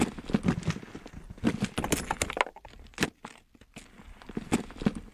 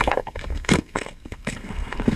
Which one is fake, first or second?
second